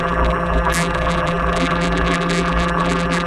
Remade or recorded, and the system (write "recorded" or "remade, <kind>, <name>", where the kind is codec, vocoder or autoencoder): remade, vocoder, BigVGAN v2